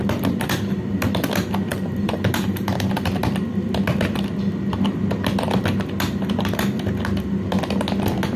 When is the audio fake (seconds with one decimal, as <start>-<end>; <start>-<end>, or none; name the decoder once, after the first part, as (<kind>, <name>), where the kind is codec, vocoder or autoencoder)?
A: 1.7-3.2 (vocoder, BigVGAN v2)